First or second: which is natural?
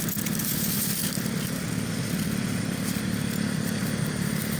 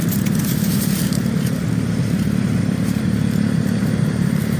first